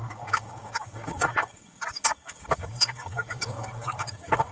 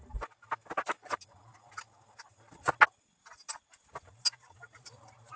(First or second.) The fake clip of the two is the first